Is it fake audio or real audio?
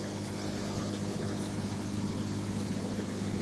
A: fake